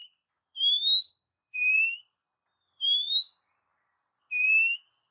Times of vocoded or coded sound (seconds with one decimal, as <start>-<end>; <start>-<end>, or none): 0.0-3.1